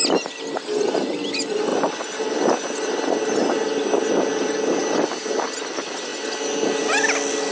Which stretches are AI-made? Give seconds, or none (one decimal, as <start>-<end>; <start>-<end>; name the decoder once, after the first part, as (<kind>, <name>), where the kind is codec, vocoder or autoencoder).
none